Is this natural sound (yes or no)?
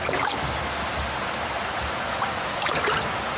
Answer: yes